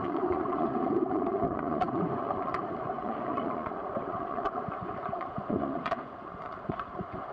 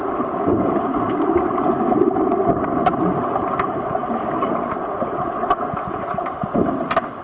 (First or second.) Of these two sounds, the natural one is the second